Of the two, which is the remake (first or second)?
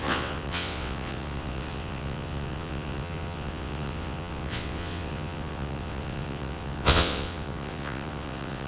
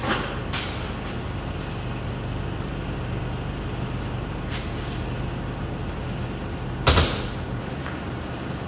first